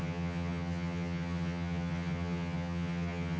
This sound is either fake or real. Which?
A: fake